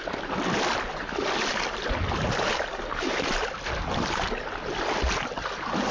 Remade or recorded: recorded